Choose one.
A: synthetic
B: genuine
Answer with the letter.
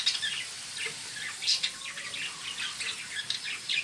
B